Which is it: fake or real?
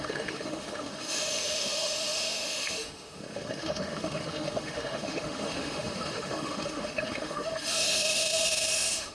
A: fake